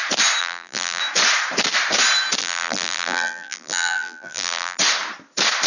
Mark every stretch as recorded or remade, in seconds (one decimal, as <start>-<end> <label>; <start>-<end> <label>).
0.0-0.4 recorded; 0.4-1.0 remade; 1.0-2.4 recorded; 2.4-4.8 remade; 4.8-5.7 recorded